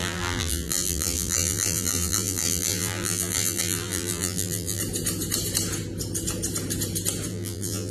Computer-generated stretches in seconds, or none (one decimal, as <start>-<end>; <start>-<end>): 0.0-4.8; 7.3-7.9